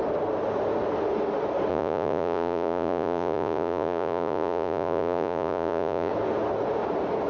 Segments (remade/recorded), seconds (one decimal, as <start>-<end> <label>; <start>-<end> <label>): 0.0-1.7 recorded; 1.7-6.1 remade; 6.1-7.3 recorded